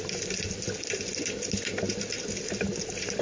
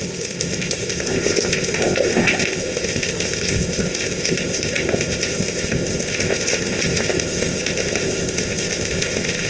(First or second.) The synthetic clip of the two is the second